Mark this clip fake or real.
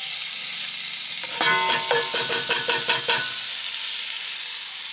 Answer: real